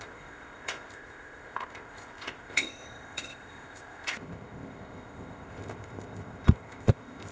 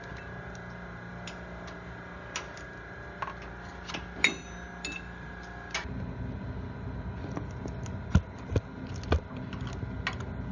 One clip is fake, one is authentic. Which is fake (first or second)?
first